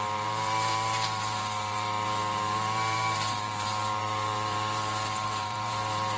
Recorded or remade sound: remade